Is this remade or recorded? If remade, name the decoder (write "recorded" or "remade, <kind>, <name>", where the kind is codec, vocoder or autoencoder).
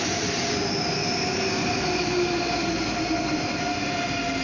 recorded